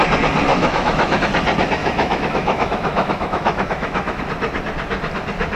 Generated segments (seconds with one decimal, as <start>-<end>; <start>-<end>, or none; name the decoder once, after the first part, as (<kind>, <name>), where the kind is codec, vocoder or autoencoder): 0.5-1.2 (autoencoder, DAC-VAE); 1.8-4.2